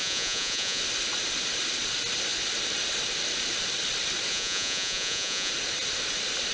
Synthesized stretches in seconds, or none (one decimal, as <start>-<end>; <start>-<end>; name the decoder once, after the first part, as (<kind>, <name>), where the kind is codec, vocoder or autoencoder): 0.0-0.8 (vocoder, Vocos); 4.3-5.5